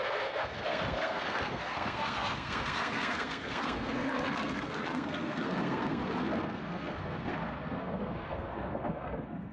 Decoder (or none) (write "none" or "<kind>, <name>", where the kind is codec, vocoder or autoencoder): codec, SNAC